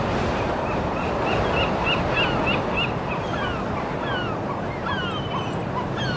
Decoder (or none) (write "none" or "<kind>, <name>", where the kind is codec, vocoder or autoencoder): none